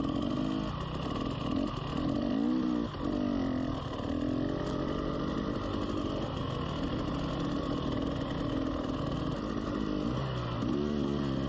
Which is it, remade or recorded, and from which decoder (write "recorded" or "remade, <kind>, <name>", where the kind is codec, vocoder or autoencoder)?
recorded